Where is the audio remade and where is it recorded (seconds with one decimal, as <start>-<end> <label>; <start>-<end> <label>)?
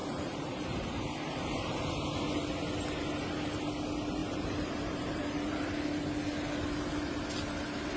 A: 0.0-1.9 remade; 1.9-4.2 recorded; 4.2-5.7 remade; 5.7-8.0 recorded